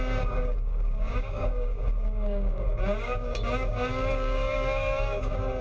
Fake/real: fake